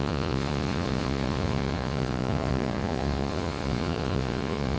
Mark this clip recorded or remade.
remade